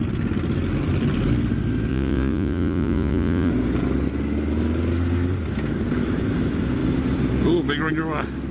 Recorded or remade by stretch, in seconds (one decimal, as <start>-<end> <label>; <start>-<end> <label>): 0.0-1.9 recorded; 1.9-3.5 remade; 3.5-8.5 recorded